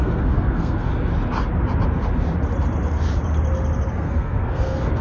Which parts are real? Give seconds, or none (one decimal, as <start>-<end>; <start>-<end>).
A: 0.9-3.9